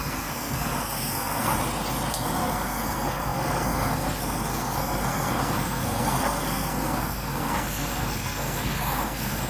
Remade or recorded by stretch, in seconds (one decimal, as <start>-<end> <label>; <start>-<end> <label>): 0.0-1.5 remade; 1.5-2.1 recorded; 2.1-9.5 remade